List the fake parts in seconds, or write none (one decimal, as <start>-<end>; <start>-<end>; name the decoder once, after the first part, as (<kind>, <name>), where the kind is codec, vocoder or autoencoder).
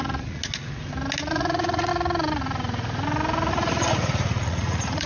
0.0-0.4 (vocoder, Vocos); 1.3-1.9; 3.5-5.1